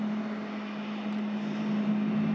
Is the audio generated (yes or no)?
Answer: no